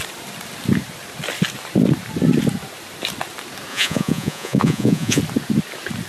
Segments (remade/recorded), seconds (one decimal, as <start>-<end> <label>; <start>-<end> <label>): 0.0-3.7 recorded; 3.7-5.2 remade; 5.2-6.1 recorded

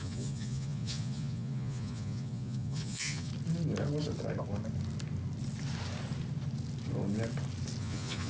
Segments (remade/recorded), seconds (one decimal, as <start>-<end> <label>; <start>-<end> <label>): 0.0-3.3 remade; 3.3-7.8 recorded; 7.8-8.3 remade

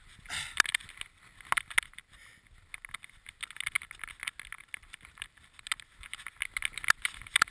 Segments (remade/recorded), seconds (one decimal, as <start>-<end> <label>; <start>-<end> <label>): 0.0-7.5 recorded

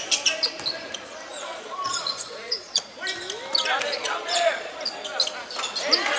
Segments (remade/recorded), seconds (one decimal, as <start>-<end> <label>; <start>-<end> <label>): 0.0-1.3 recorded; 1.3-3.0 remade; 3.0-3.9 recorded; 3.9-4.8 remade; 4.8-6.2 recorded